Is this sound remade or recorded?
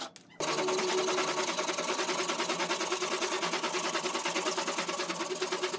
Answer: recorded